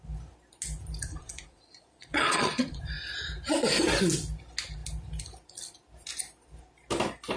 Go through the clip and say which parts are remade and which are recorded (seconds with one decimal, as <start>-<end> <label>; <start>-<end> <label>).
0.0-1.1 recorded; 1.1-2.8 remade; 2.8-7.4 recorded